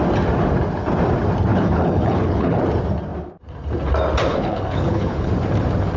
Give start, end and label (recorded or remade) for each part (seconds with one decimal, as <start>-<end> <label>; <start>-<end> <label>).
0.0-1.5 recorded; 1.5-2.6 remade; 2.6-4.3 recorded; 4.3-5.3 remade; 5.3-6.0 recorded